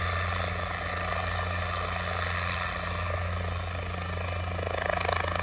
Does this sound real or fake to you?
real